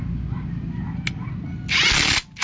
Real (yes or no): yes